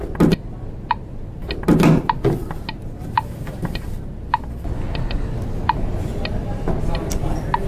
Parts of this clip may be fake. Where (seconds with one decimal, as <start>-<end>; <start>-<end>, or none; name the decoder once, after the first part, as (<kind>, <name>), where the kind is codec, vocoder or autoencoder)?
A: none